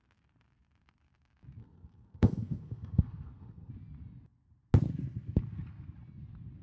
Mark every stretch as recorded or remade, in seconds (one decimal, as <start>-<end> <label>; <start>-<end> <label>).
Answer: 0.0-1.6 recorded; 1.6-3.7 remade; 3.7-6.6 recorded